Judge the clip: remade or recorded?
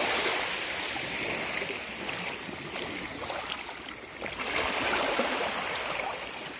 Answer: recorded